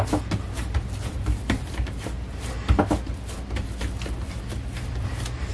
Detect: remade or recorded recorded